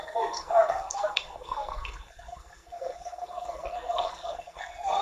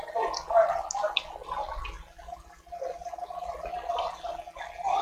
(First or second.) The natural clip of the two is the second